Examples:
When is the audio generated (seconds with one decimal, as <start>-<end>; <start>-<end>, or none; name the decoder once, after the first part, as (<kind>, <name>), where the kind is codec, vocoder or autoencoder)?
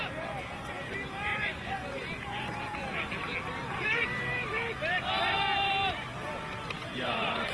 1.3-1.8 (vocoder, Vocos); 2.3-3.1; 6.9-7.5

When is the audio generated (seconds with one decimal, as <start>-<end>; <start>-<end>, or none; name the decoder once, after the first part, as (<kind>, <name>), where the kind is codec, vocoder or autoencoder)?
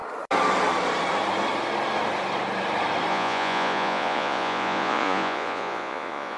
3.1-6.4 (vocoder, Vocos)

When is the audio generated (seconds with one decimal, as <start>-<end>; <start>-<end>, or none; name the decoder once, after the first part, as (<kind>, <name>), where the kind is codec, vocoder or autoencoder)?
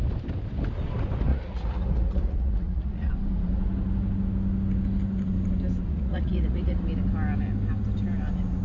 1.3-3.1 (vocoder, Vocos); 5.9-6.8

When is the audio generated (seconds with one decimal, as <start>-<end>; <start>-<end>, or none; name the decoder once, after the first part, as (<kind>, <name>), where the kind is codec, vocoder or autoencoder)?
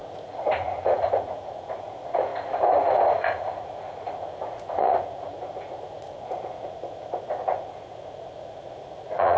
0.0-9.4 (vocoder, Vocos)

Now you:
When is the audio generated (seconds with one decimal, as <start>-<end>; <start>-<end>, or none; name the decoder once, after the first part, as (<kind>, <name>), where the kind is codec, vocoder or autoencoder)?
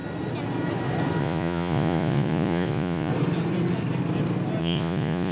1.2-3.1 (vocoder, Vocos); 4.6-5.3